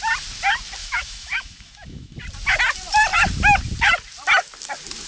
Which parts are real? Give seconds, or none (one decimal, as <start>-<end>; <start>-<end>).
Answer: 0.0-0.8; 2.2-5.1